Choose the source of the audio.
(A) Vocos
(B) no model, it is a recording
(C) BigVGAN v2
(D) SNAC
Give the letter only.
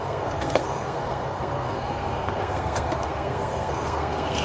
D